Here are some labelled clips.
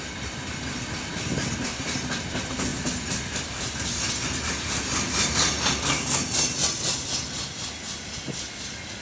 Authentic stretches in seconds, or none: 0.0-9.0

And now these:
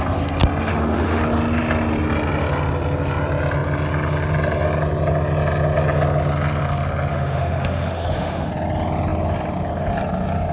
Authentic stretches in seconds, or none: 0.0-0.7; 1.2-7.1; 8.5-10.5

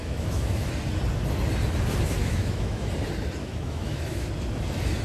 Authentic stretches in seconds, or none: 0.7-2.2; 2.9-3.4; 4.3-5.0

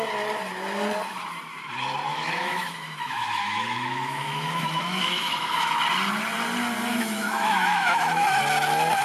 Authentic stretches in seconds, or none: 0.0-2.1; 5.8-6.9; 8.4-9.0

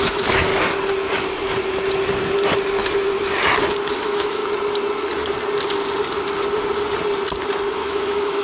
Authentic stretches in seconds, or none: 0.5-3.9; 4.4-7.7